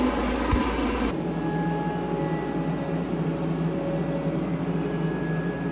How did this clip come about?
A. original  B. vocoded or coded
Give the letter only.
A